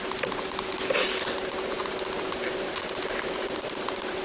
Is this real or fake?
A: real